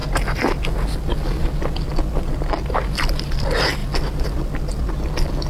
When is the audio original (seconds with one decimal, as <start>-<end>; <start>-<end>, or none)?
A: 0.0-5.5